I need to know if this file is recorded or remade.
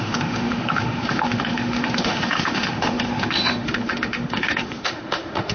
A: remade